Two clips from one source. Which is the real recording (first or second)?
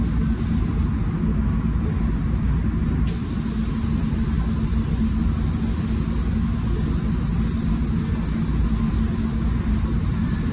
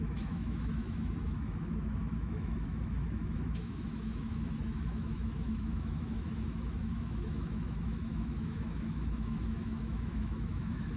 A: first